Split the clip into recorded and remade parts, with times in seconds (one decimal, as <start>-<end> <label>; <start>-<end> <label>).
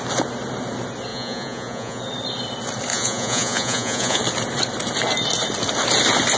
0.0-1.1 recorded; 1.1-2.0 remade; 2.0-2.9 recorded; 2.9-4.2 remade; 4.2-6.4 recorded